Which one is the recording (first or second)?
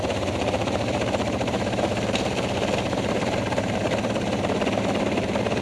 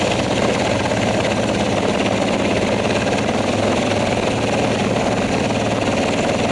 second